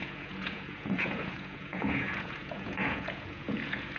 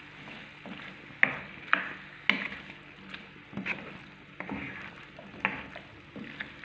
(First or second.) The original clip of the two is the second